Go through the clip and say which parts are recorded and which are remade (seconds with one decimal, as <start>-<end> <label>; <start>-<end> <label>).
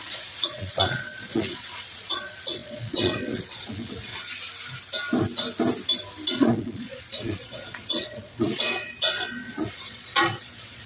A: 0.0-4.1 remade; 4.1-6.3 recorded; 6.3-10.9 remade